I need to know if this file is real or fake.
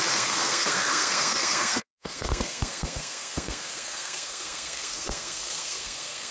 fake